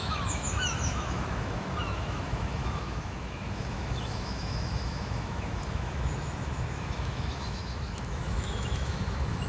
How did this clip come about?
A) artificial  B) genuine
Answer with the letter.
A